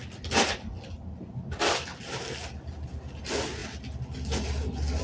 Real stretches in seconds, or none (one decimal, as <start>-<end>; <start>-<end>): 0.0-5.0